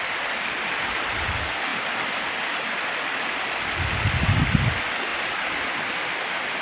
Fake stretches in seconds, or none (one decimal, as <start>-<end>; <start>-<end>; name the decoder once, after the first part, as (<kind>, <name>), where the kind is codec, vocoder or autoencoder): none